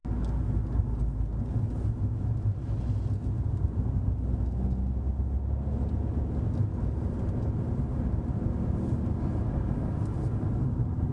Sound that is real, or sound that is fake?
real